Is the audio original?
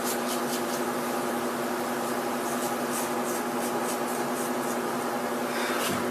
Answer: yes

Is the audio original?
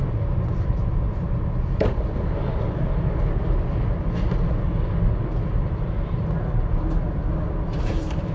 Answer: yes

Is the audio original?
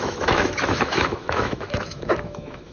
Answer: no